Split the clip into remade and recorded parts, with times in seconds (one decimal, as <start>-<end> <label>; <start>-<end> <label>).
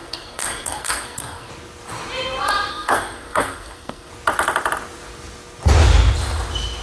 0.0-1.5 remade; 1.5-2.7 recorded; 2.7-4.1 remade; 4.1-6.8 recorded